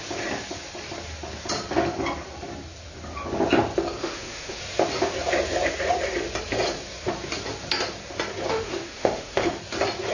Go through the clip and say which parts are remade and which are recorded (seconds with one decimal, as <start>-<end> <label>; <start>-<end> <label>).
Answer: 0.0-4.0 recorded; 4.0-4.6 remade; 4.6-8.5 recorded; 8.5-9.5 remade; 9.5-10.1 recorded